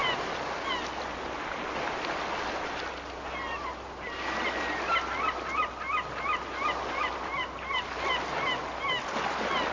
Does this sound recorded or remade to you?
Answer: recorded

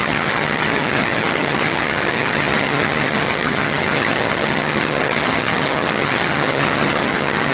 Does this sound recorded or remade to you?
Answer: remade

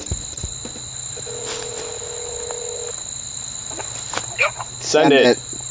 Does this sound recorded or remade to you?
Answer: recorded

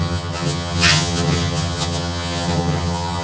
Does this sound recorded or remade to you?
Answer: remade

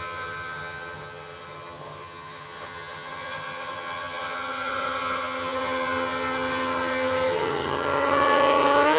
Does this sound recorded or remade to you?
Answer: remade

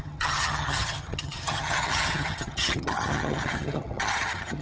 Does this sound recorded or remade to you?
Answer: remade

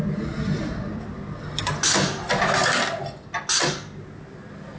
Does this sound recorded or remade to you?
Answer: recorded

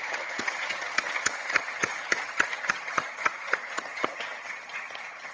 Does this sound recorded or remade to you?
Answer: remade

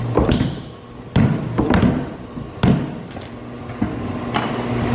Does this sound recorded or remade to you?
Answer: recorded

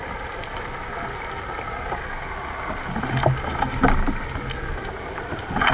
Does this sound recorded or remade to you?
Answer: recorded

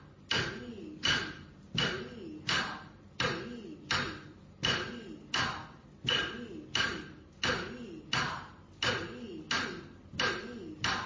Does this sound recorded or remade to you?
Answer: recorded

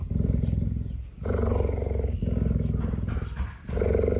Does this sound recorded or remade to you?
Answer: recorded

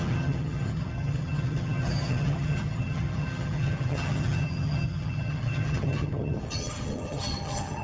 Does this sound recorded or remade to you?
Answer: remade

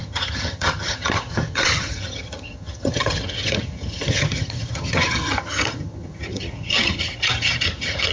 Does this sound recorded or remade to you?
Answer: remade